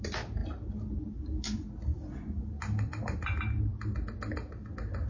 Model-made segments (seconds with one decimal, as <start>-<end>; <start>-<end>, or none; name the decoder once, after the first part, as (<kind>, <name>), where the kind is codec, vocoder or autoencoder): none